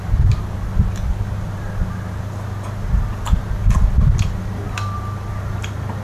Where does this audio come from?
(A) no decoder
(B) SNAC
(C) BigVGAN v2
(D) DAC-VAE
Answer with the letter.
A